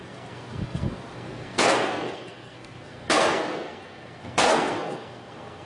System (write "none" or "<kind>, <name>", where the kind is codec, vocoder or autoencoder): codec, SNAC